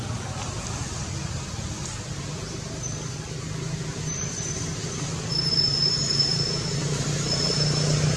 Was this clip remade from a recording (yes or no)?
no